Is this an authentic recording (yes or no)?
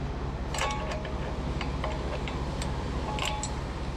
yes